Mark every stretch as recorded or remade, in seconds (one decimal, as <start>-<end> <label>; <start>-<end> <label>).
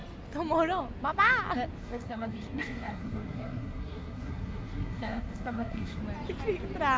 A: 0.0-1.8 recorded; 1.8-6.0 remade; 6.0-7.0 recorded